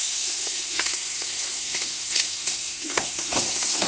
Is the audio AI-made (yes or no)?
yes